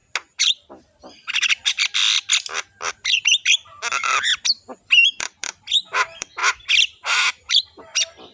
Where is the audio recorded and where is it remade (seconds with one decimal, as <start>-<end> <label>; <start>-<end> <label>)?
0.0-0.7 recorded; 0.7-2.0 remade; 2.0-2.9 recorded; 2.9-4.3 remade; 4.3-5.0 recorded; 5.0-8.3 remade